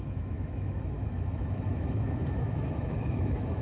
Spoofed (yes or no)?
yes